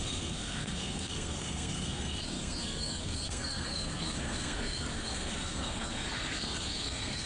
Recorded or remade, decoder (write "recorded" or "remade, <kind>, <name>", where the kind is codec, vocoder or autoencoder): remade, codec, SNAC